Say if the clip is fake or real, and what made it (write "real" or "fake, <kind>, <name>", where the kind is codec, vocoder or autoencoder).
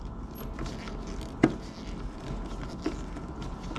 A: real